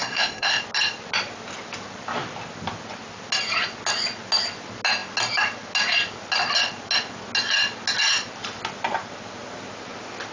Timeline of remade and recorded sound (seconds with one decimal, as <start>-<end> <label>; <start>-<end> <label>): 0.0-0.6 remade; 0.6-10.3 recorded